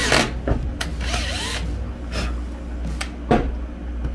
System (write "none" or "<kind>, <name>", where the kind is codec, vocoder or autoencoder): none